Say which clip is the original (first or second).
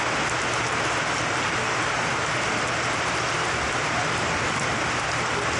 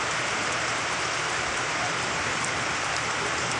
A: first